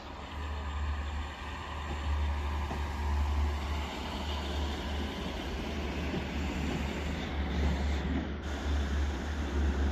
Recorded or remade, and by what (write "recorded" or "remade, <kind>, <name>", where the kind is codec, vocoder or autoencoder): recorded